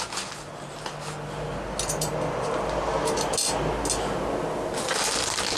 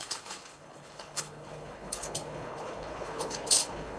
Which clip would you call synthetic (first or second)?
second